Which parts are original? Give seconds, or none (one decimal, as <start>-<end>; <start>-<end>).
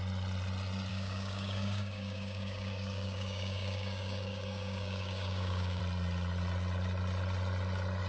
0.0-0.9; 5.8-8.1